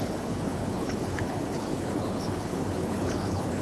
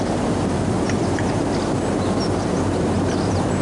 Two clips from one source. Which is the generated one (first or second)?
first